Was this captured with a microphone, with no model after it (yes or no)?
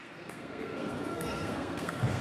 no